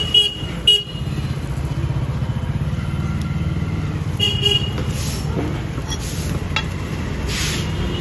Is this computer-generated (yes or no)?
no